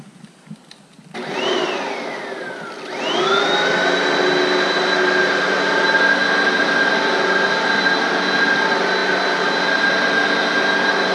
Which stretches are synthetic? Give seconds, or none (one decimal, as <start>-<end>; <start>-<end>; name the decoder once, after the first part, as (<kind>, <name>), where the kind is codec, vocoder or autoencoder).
none